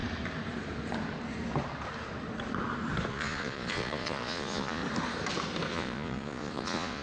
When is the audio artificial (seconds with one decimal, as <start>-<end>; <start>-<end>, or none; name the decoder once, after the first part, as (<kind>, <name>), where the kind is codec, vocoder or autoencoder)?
3.1-4.8 (vocoder, Vocos); 5.7-7.0